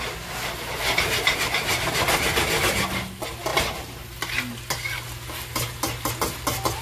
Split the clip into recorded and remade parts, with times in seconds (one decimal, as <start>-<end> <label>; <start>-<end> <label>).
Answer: 0.0-6.8 recorded